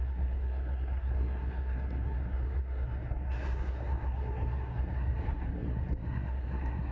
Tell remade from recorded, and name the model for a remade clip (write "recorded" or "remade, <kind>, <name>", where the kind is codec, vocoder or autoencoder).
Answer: remade, codec, SNAC